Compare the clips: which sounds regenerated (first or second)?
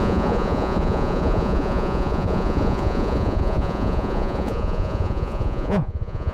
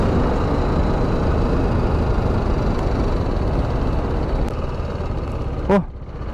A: first